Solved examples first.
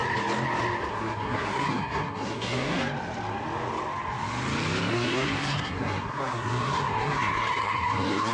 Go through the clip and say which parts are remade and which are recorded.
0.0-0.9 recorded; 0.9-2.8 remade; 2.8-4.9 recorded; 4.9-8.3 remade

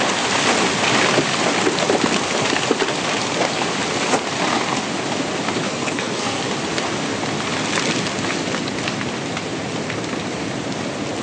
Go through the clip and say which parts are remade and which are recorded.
0.0-5.7 recorded; 5.7-6.4 remade; 6.4-11.2 recorded

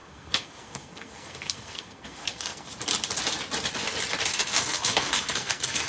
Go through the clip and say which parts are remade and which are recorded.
0.0-2.7 remade; 2.7-4.3 recorded; 4.3-5.9 remade